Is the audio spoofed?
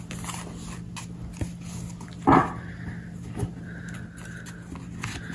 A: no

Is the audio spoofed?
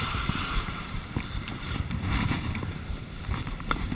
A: yes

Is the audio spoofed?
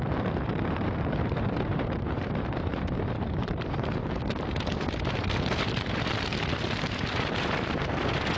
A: yes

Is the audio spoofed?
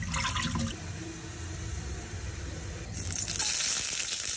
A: no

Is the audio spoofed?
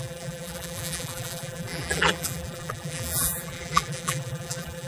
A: yes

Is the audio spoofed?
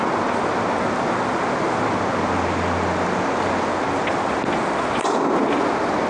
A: no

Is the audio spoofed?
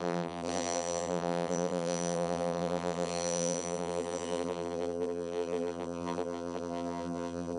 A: yes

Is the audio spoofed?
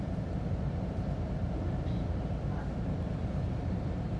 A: no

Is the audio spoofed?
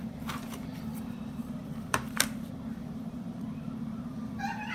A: yes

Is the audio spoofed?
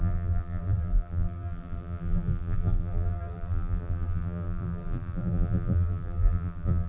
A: yes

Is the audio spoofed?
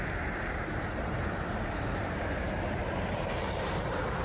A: yes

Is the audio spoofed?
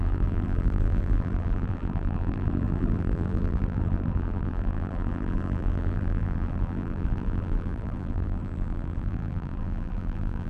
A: yes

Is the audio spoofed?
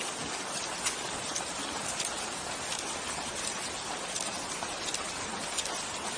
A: no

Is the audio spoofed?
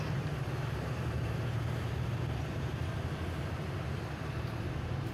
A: yes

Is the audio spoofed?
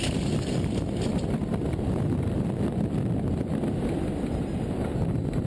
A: no